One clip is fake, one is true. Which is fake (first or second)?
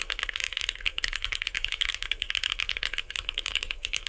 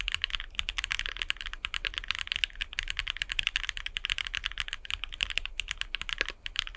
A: first